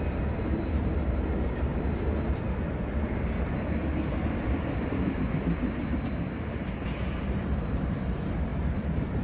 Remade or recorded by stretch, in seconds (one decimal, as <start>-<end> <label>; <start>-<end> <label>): 0.0-1.7 remade; 1.7-2.4 recorded; 2.4-9.2 remade